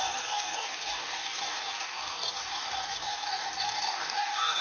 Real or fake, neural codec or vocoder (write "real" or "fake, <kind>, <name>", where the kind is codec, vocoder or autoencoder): fake, codec, DAC